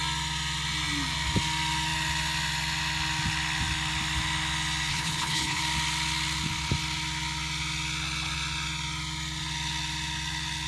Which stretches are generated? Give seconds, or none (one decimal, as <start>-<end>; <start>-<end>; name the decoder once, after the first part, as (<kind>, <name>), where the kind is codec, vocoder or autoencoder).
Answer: 4.9-5.6 (codec, HILCodec)